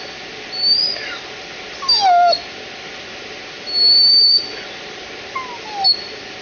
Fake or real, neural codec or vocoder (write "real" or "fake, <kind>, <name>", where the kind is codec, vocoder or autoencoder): real